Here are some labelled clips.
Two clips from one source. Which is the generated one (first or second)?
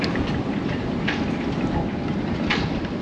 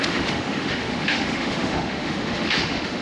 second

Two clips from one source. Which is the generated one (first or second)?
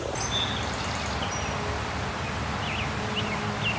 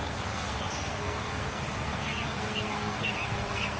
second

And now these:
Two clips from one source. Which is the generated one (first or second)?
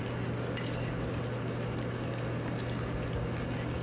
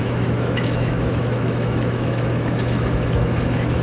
second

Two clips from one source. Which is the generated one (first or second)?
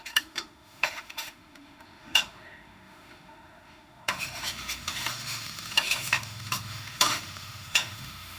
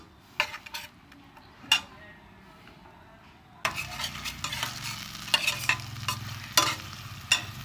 first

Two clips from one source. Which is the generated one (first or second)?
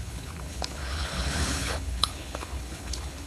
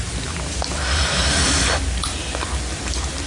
first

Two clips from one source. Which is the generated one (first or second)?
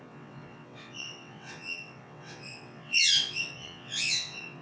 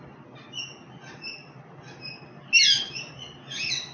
first